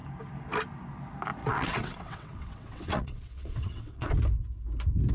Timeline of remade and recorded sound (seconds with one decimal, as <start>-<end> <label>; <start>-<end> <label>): 0.0-1.4 recorded; 1.4-4.2 remade; 4.2-5.1 recorded